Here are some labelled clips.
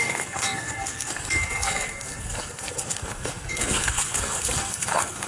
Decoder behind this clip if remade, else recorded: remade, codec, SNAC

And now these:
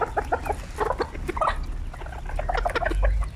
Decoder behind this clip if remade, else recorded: recorded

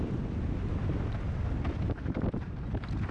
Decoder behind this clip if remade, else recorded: recorded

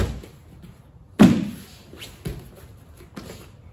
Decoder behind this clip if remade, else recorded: recorded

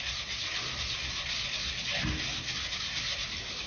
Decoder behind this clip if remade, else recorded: recorded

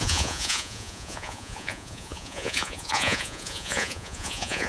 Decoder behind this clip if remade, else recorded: remade, vocoder, Vocos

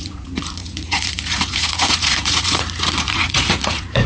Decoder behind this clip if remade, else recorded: remade, vocoder, Vocos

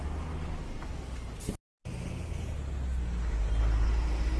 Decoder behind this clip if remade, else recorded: recorded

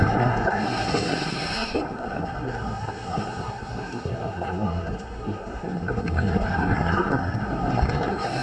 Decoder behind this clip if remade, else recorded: remade, codec, SNAC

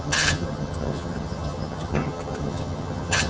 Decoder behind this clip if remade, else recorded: remade, vocoder, HiFi-GAN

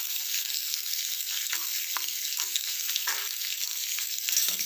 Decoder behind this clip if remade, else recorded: remade, codec, SNAC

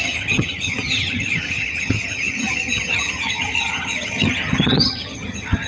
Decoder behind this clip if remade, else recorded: remade, vocoder, HiFi-GAN